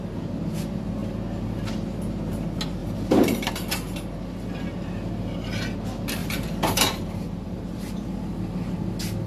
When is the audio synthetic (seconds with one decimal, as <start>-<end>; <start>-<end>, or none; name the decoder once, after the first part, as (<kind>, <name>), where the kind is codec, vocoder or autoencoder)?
2.8-3.5 (vocoder, BigVGAN v2); 6.2-8.1